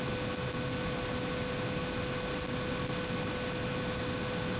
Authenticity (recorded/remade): recorded